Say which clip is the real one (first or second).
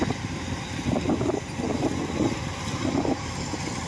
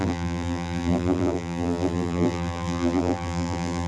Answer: first